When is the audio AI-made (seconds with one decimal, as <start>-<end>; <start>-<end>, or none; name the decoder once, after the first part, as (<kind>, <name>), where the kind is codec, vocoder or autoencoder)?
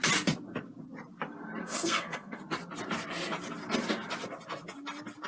1.6-2.4 (codec, SNAC)